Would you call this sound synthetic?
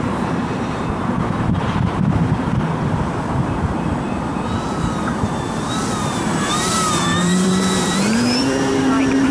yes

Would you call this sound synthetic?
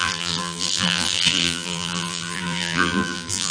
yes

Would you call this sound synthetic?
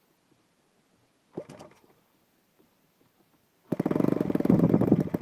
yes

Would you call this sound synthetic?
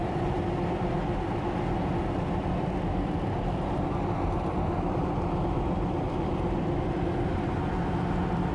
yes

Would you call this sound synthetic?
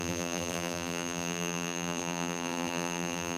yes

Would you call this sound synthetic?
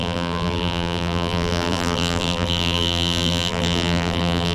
yes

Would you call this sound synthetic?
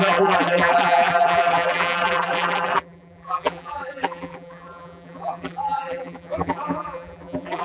yes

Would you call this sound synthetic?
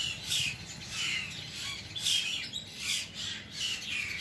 no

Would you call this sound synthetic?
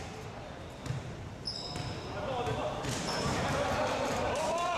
yes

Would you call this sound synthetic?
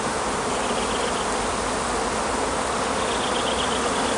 no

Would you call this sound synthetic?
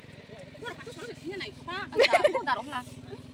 no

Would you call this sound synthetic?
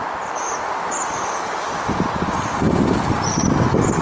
no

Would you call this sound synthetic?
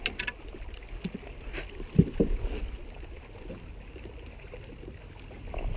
no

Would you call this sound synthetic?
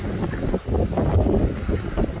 no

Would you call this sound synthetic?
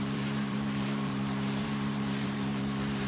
yes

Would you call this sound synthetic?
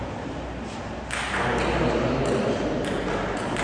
no